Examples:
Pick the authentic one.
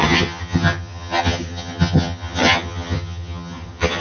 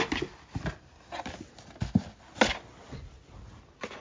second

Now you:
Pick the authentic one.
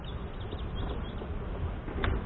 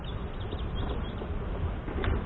first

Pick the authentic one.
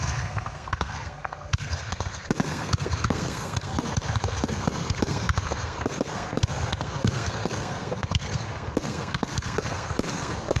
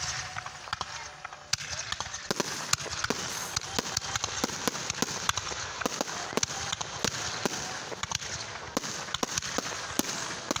second